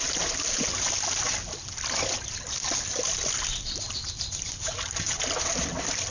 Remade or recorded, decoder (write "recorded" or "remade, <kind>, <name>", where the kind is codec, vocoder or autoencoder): recorded